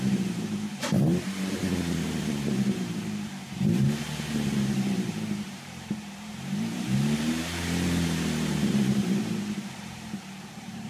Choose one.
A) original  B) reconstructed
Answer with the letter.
B